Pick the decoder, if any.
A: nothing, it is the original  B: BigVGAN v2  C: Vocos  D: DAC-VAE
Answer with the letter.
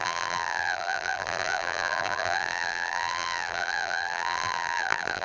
B